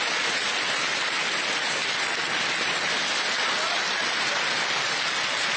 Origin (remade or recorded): recorded